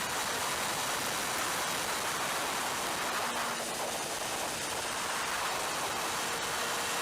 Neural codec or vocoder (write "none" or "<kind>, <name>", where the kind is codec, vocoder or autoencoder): none